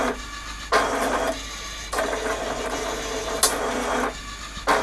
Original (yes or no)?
yes